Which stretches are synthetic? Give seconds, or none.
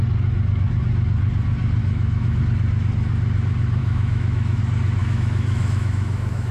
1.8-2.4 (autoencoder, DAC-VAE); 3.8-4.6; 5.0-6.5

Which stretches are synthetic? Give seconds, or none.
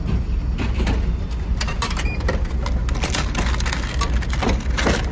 1.7-2.5 (vocoder, BigVGAN v2)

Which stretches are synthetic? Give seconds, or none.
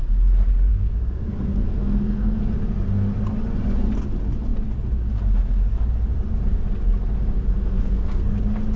0.7-2.4 (codec, SNAC); 7.6-8.4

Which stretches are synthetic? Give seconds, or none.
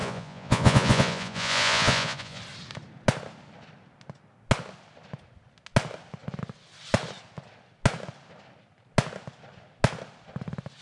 0.0-2.4 (vocoder, Vocos)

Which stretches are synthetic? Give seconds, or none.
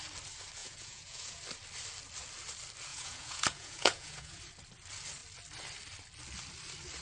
0.6-1.4 (vocoder, Vocos); 2.9-4.4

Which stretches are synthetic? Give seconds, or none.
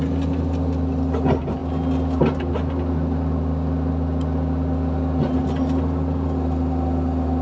none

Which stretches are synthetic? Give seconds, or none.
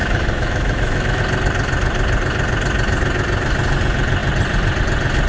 0.0-1.2 (autoencoder, DAC-VAE)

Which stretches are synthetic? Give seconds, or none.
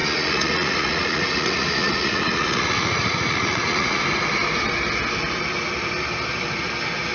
0.0-4.0 (vocoder, Vocos)